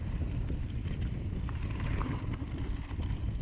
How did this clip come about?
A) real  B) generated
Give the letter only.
A